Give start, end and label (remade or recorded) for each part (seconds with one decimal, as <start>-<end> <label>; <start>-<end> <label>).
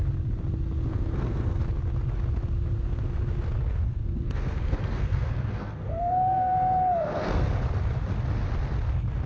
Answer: 0.0-0.9 recorded; 0.9-1.6 remade; 1.6-3.7 recorded; 3.7-7.5 remade; 7.5-9.3 recorded